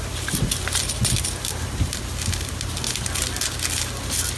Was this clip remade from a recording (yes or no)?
no